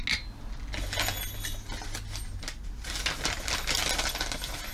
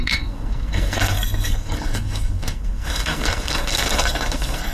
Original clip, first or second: first